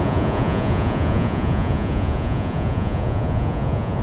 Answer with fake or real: fake